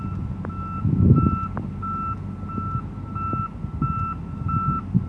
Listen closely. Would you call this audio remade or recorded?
recorded